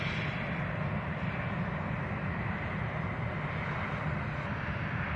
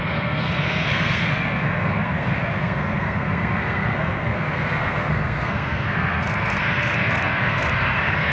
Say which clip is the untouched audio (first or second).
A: first